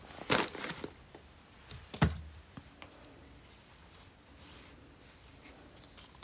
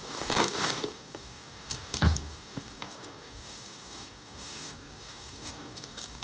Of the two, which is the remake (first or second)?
second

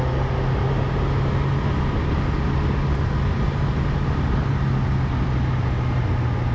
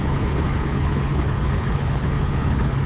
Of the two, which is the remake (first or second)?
second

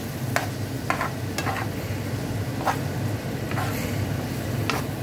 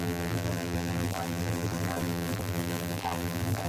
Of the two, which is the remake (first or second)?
second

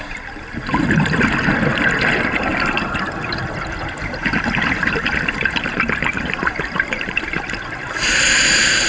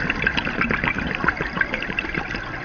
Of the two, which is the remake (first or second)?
first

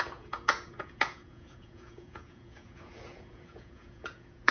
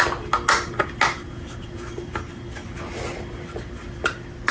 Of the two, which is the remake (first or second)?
first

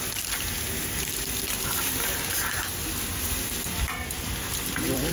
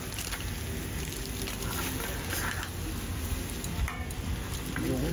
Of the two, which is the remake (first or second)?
first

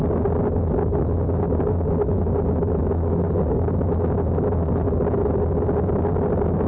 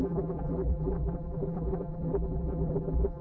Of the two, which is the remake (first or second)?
second